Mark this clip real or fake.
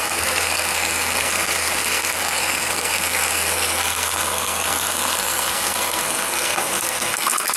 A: fake